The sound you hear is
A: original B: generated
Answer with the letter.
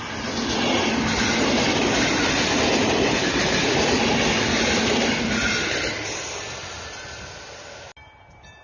A